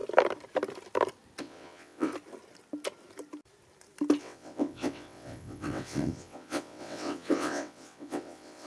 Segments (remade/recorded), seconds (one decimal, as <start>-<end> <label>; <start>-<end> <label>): 0.0-1.4 recorded; 1.4-2.1 remade; 2.1-4.2 recorded; 4.2-8.7 remade